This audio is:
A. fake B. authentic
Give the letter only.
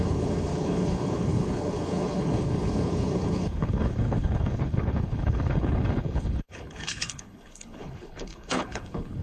A